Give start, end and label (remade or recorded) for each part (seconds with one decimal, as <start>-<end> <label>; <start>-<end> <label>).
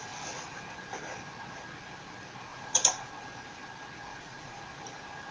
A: 0.0-2.5 recorded; 2.5-3.1 remade; 3.1-4.1 recorded; 4.1-4.6 remade; 4.6-5.3 recorded